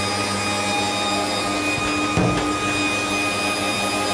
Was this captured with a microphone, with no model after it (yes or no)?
yes